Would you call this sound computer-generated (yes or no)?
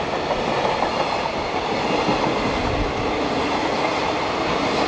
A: no